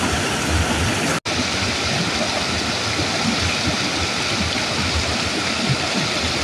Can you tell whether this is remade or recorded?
recorded